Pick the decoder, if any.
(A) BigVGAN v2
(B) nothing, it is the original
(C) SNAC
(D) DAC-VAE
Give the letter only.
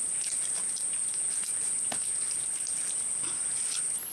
B